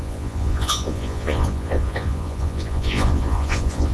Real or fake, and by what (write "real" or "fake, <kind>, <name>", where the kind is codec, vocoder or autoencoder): fake, vocoder, Vocos